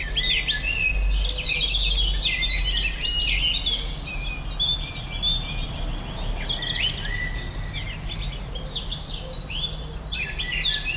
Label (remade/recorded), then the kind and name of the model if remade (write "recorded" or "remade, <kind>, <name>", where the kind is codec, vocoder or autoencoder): recorded